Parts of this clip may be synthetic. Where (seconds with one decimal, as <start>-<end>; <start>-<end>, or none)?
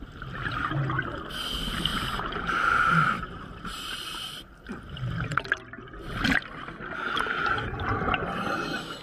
1.9-4.2